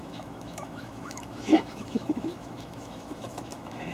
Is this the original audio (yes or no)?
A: no